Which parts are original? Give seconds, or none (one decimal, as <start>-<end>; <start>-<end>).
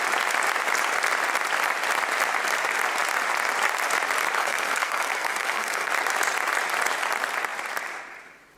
0.0-4.4; 5.9-8.6